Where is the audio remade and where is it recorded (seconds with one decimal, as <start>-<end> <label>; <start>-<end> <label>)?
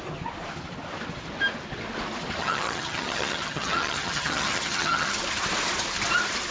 0.0-2.4 recorded; 2.4-5.2 remade; 5.2-6.5 recorded